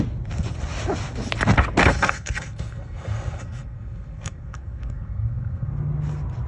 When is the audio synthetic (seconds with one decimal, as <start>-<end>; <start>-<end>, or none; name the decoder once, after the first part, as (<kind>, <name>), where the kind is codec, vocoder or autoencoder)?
1.8-5.7 (codec, SNAC)